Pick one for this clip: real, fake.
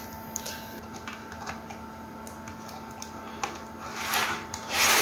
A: real